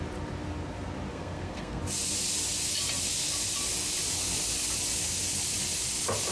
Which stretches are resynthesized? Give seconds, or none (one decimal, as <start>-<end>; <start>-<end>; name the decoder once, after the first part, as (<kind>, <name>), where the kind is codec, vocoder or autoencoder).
1.1-1.8 (codec, SNAC)